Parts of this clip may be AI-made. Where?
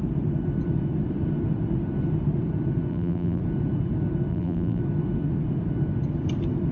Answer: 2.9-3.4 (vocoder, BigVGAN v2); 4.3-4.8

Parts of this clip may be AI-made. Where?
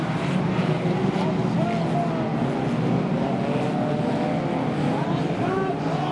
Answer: 0.0-1.4 (vocoder, BigVGAN v2); 5.1-6.1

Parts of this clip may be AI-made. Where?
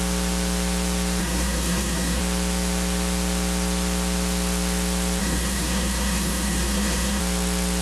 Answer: 1.2-2.2 (codec, SNAC); 5.2-7.2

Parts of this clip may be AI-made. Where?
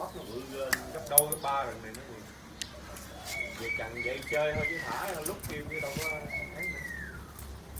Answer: none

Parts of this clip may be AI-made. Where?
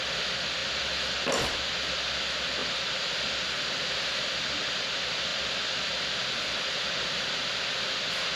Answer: 0.6-1.7 (vocoder, BigVGAN v2); 2.6-4.6